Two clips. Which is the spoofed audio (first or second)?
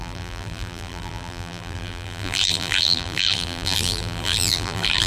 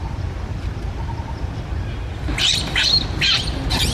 first